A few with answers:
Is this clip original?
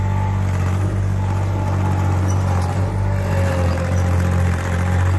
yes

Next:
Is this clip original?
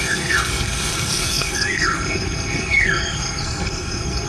no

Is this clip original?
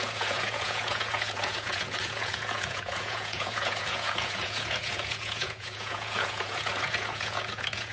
no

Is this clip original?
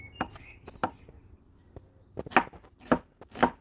yes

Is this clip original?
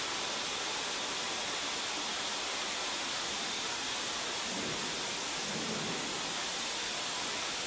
yes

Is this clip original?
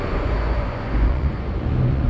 no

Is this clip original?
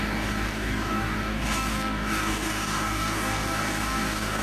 no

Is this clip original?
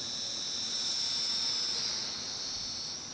yes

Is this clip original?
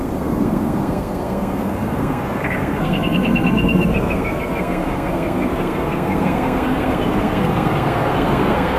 no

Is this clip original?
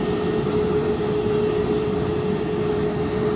yes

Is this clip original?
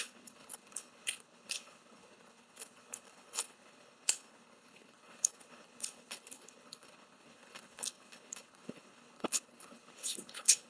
no